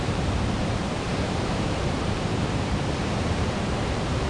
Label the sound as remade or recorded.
remade